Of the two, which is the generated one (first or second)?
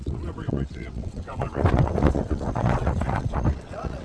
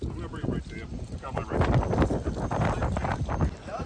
first